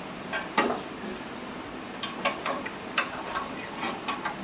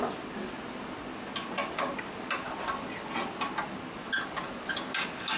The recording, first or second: second